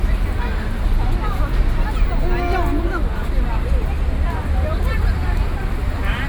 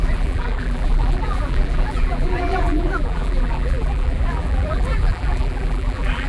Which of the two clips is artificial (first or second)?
second